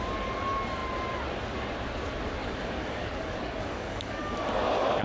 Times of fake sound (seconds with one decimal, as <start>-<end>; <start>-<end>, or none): 2.4-5.0